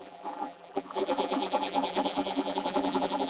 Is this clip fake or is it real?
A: fake